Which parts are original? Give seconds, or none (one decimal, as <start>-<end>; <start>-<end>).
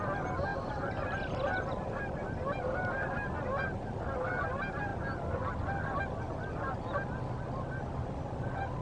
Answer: 0.0-0.5; 1.6-8.8